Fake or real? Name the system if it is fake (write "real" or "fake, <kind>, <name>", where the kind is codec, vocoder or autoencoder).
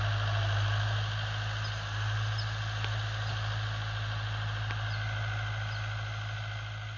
real